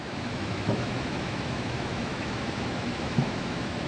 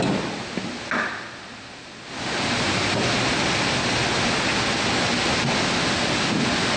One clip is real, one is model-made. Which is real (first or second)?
second